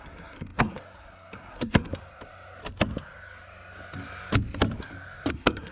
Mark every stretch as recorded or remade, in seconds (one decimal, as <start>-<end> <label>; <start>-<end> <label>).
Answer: 0.0-1.9 remade; 1.9-5.3 recorded; 5.3-5.7 remade